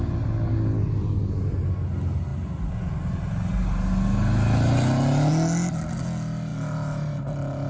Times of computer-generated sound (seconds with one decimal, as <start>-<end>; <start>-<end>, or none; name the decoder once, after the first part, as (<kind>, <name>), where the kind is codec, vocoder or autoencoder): 6.5-7.7 (vocoder, BigVGAN v2)